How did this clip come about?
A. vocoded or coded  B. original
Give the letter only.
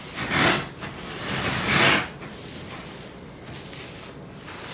B